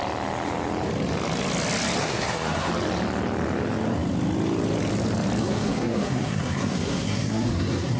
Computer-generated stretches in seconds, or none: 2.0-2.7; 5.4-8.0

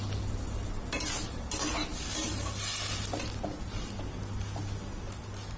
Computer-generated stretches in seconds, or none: none

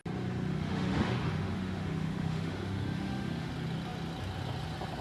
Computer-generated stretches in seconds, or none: 0.5-3.5

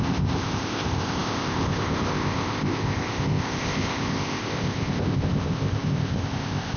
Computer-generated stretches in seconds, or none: 0.0-6.8

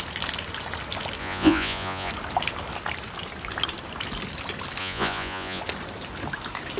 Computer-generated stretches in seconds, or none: 1.2-2.1; 4.8-5.6

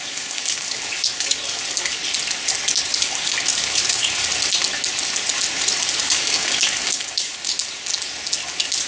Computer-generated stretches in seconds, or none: 0.0-2.0; 2.9-4.3; 6.0-7.5

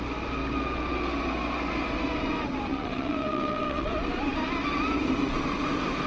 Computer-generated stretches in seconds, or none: 2.7-3.9

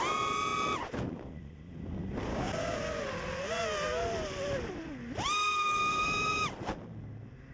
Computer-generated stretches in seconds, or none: 2.3-2.9